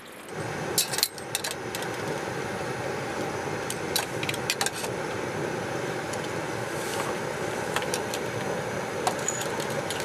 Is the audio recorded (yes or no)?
yes